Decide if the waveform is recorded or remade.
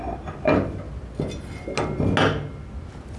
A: recorded